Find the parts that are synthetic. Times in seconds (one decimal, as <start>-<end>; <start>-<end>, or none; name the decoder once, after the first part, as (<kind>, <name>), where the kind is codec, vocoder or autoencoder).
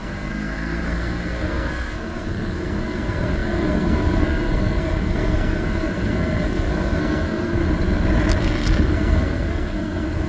0.0-7.6 (codec, SNAC); 8.4-10.3